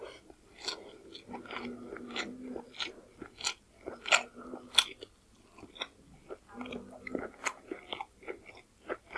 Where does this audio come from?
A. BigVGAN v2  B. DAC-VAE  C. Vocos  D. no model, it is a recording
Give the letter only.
D